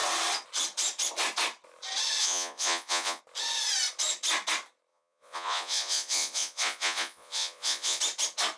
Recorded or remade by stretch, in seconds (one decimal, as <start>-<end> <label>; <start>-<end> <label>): 0.0-2.2 recorded; 2.2-3.2 remade; 3.2-4.9 recorded; 4.9-8.0 remade; 8.0-8.6 recorded